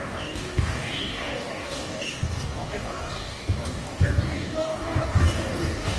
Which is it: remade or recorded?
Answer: remade